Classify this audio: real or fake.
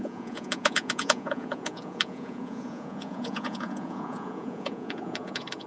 fake